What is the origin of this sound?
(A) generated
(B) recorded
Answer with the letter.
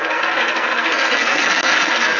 A